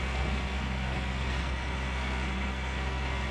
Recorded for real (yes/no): no